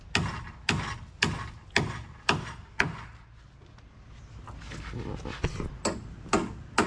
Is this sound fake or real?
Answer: real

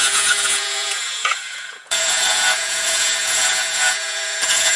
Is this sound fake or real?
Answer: fake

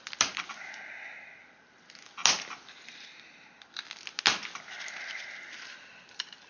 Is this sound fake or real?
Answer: real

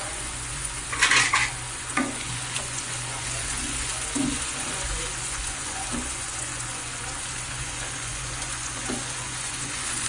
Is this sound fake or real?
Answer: fake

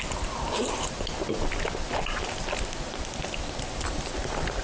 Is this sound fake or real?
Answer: real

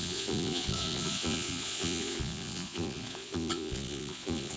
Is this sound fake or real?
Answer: fake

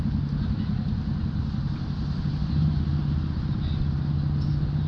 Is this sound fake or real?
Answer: real